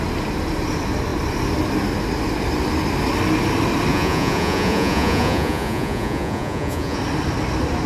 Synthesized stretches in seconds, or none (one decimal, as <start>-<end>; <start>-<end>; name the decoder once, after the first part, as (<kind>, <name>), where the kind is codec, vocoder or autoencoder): 3.9-7.0 (vocoder, Vocos)